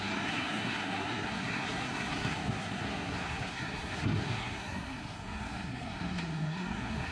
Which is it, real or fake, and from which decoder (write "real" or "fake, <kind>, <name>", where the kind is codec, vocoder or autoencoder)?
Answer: fake, codec, SNAC